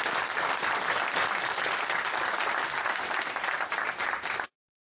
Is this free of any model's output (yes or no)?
yes